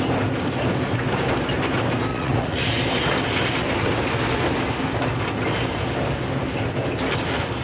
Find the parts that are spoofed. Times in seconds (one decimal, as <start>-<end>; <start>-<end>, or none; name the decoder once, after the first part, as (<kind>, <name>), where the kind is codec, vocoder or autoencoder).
2.1-2.7 (vocoder, Vocos)